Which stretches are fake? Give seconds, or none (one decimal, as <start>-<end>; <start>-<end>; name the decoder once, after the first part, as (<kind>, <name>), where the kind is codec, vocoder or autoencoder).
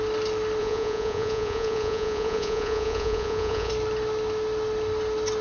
0.6-3.7 (vocoder, Vocos)